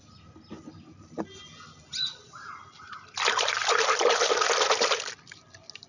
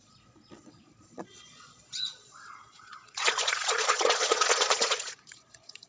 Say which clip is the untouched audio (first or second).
first